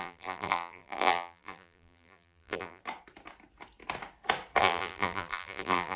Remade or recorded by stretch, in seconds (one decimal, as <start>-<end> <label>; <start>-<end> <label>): 0.0-2.8 remade; 2.8-4.6 recorded; 4.6-6.0 remade